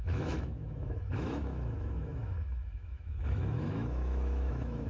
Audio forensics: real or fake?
fake